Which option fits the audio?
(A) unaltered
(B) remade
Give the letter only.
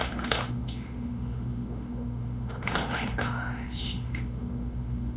B